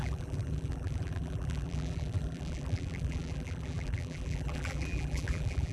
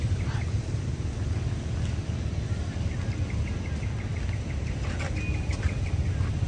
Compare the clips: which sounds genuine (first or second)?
second